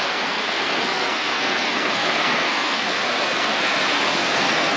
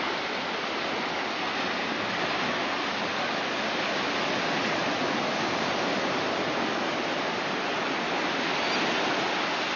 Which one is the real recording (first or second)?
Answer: second